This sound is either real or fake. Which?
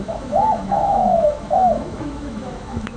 fake